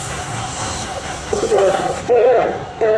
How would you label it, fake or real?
fake